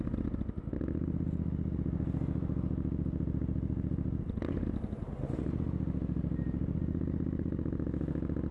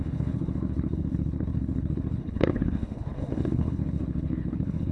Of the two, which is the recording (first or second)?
first